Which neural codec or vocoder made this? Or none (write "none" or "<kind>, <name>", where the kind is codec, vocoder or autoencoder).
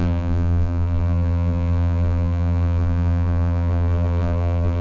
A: vocoder, BigVGAN v2